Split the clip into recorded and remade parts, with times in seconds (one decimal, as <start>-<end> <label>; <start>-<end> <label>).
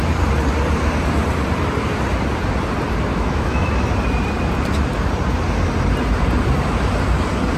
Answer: 0.0-3.1 recorded; 3.1-3.7 remade; 3.7-7.6 recorded